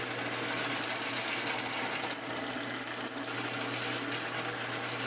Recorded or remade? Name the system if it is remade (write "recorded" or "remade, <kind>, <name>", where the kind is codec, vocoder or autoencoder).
recorded